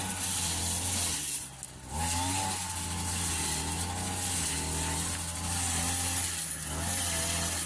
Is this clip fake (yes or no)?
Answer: no